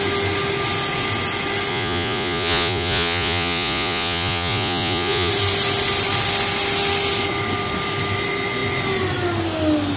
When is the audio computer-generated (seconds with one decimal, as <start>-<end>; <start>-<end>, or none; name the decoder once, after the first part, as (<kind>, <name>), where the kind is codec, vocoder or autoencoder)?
1.7-5.3 (vocoder, Vocos)